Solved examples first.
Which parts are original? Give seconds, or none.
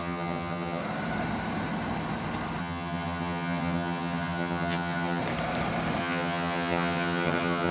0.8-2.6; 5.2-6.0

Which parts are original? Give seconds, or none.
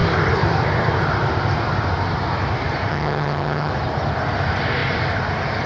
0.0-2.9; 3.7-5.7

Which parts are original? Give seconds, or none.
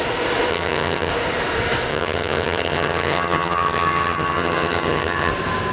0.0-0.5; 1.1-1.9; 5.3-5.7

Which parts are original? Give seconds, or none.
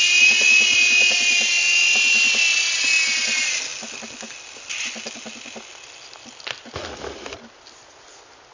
0.0-8.5